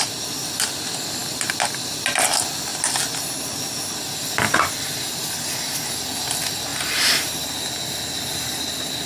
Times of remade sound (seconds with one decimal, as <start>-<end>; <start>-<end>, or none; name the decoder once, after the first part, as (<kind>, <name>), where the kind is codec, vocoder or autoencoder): 6.7-7.5 (vocoder, BigVGAN v2)